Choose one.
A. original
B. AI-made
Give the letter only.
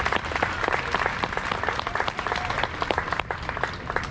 B